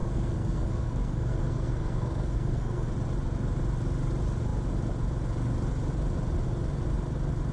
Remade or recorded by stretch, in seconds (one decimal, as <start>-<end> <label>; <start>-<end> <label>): 0.0-2.9 remade; 2.9-7.5 recorded